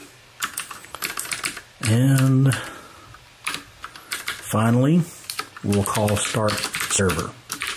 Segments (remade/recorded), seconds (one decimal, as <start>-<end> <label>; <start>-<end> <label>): 0.0-7.8 recorded